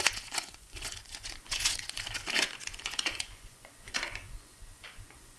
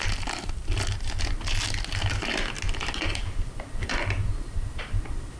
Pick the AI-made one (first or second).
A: first